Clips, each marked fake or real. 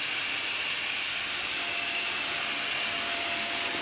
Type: real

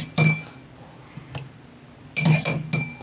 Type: real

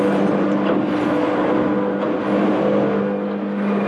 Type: real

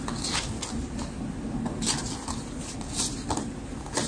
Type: real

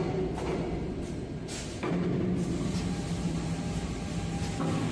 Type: real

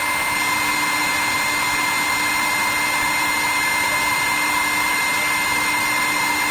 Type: real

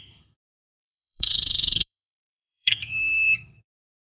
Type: fake